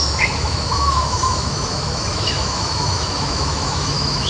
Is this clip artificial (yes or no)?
yes